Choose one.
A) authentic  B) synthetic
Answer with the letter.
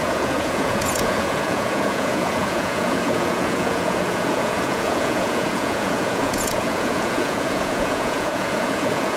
B